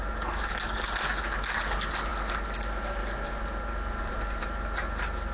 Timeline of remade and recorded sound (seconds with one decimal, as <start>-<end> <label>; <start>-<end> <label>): 0.0-5.3 recorded